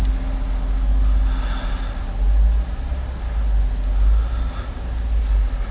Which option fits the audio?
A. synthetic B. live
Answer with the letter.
B